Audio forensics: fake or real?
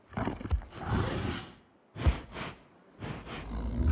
real